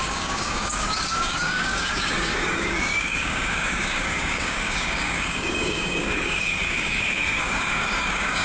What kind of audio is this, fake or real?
fake